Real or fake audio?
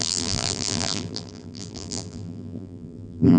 fake